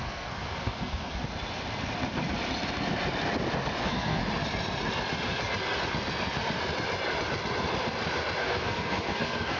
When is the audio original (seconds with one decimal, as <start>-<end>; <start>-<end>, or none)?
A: 1.2-3.8; 4.2-8.4